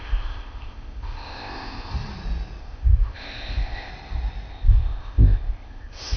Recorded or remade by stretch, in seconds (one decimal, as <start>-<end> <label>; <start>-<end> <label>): 0.0-1.9 remade; 1.9-2.6 recorded; 2.6-3.9 remade; 3.9-4.5 recorded; 4.5-6.2 remade